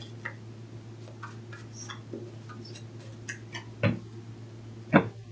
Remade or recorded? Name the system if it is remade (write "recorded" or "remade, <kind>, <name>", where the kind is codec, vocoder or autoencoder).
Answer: recorded